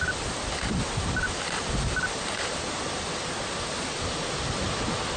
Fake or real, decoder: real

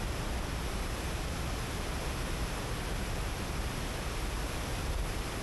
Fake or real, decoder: real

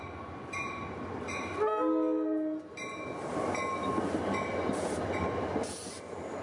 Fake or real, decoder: real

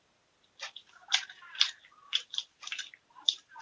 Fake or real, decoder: fake, vocoder, BigVGAN v2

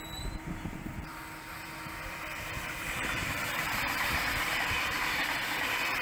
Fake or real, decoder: fake, vocoder, BigVGAN v2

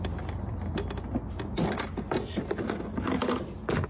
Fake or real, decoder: real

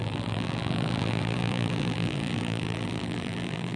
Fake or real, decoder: fake, vocoder, BigVGAN v2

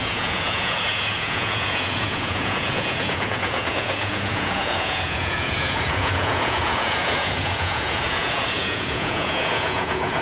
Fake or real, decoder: fake, vocoder, Vocos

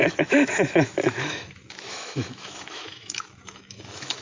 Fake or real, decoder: fake, autoencoder, DAC-VAE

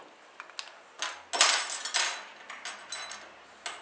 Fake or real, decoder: real